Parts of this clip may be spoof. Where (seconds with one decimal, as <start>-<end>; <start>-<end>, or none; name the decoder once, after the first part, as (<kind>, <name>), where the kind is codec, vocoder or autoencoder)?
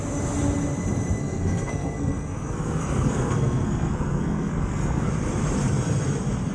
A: 1.2-5.1 (codec, SNAC)